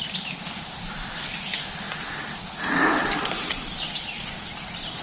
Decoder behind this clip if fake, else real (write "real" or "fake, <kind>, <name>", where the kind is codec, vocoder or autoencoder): real